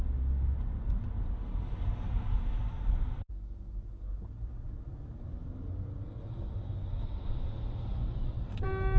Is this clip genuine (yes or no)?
yes